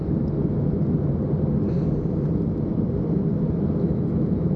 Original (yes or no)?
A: yes